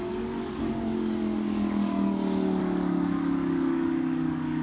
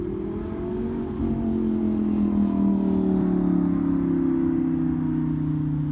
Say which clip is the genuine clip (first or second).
second